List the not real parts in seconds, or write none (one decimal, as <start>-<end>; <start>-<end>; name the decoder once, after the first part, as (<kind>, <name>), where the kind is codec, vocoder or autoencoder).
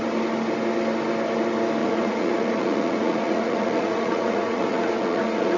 1.8-5.6 (vocoder, Vocos)